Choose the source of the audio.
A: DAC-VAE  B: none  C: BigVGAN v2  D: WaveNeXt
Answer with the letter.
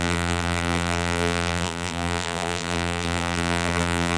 C